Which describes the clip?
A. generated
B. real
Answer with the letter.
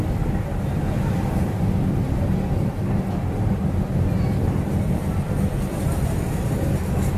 B